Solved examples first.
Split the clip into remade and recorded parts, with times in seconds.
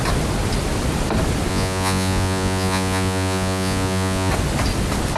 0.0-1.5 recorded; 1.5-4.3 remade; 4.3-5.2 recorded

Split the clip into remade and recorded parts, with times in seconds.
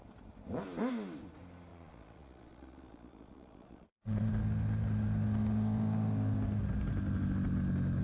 0.0-1.7 recorded; 1.7-4.3 remade; 4.3-8.0 recorded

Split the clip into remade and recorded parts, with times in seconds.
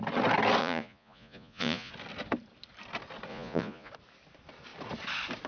0.0-0.6 recorded; 0.6-1.9 remade; 1.9-3.3 recorded; 3.3-3.9 remade; 3.9-5.5 recorded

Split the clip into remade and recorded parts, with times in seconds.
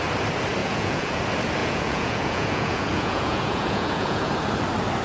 0.0-0.6 recorded; 0.6-1.2 remade; 1.2-1.6 recorded; 1.6-4.3 remade; 4.3-5.0 recorded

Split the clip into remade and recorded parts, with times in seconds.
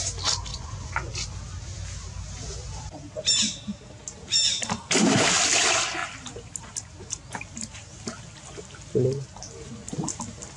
0.0-0.5 recorded; 0.5-1.1 remade; 1.1-10.6 recorded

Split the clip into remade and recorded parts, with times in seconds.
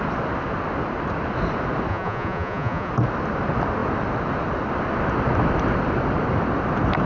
0.0-1.9 recorded; 1.9-2.9 remade; 2.9-7.1 recorded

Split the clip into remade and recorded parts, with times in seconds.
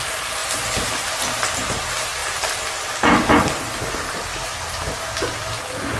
0.0-6.0 recorded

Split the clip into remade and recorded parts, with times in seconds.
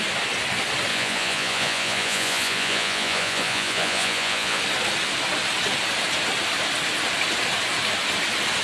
0.0-0.9 recorded; 0.9-4.6 remade; 4.6-8.6 recorded